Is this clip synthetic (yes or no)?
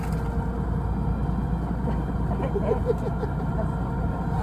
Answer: no